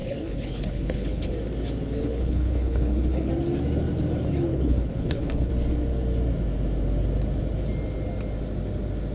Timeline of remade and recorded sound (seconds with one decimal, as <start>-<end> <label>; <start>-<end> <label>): 0.0-1.3 remade; 1.3-2.0 recorded; 2.0-3.3 remade; 3.3-4.5 recorded; 4.5-5.5 remade; 5.5-9.1 recorded